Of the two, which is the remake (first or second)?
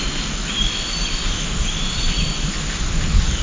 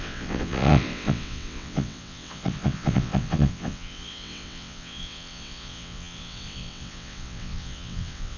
second